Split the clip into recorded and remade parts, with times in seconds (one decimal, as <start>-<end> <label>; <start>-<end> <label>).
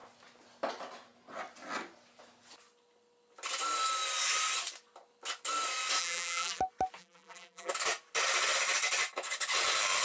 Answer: 0.0-6.0 recorded; 6.0-6.6 remade; 6.6-7.0 recorded; 7.0-7.7 remade; 7.7-10.0 recorded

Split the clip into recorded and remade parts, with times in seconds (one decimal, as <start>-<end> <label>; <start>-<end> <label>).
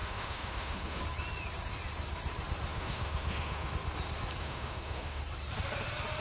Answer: 0.0-1.0 remade; 1.0-2.7 recorded; 2.7-3.7 remade; 3.7-4.4 recorded; 4.4-5.2 remade; 5.2-6.2 recorded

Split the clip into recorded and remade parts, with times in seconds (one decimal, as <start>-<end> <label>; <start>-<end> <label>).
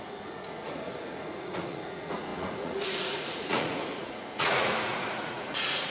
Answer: 0.0-5.9 remade